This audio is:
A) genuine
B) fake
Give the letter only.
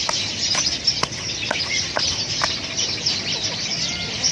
A